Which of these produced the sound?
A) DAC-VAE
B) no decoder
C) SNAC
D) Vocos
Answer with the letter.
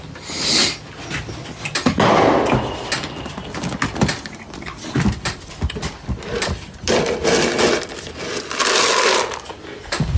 B